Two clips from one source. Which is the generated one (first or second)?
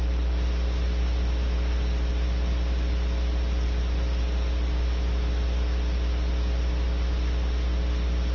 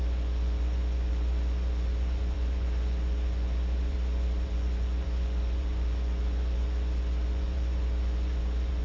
second